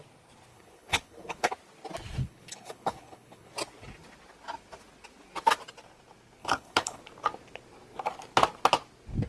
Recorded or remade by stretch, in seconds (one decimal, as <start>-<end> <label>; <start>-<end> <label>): 0.0-0.5 recorded; 0.5-1.5 remade; 1.5-2.2 recorded; 2.2-3.5 remade; 3.5-6.4 recorded; 6.4-7.0 remade; 7.0-9.3 recorded